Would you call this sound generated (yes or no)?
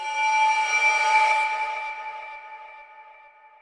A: no